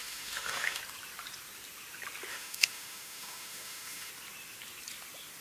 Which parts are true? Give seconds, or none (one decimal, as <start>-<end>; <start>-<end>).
0.8-2.3; 4.1-5.4